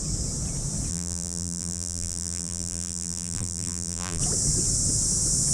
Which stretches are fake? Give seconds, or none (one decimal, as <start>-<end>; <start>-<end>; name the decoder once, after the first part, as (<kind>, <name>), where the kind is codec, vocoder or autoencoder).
0.9-4.2 (vocoder, BigVGAN v2)